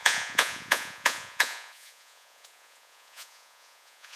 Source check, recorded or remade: remade